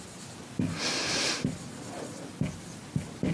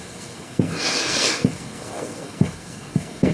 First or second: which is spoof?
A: second